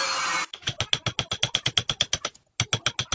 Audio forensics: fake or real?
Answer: real